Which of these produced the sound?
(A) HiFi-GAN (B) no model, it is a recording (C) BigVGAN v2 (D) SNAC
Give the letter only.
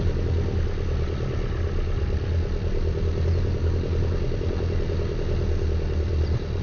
B